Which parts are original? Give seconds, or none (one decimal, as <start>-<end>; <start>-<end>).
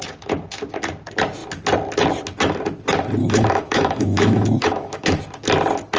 0.0-3.2; 5.2-6.0